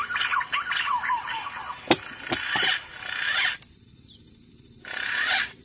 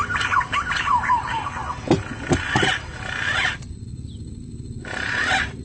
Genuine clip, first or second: second